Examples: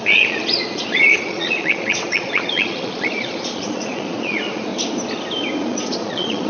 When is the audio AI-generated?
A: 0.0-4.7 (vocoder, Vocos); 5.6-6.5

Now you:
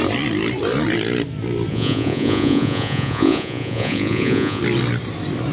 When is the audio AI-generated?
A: 1.7-4.6 (vocoder, Vocos)

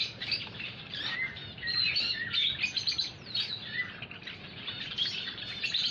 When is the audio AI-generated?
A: 0.0-1.4 (vocoder, BigVGAN v2); 4.6-5.9

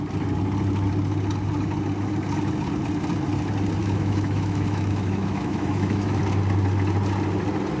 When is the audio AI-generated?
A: 3.8-6.2 (autoencoder, DAC-VAE)

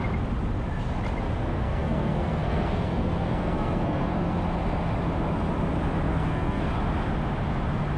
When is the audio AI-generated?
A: 1.5-4.4 (codec, SNAC); 6.1-6.7

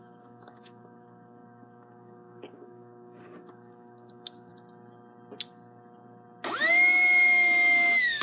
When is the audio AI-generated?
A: 0.0-4.5 (codec, DAC); 6.7-8.2